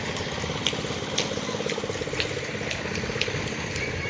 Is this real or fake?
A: real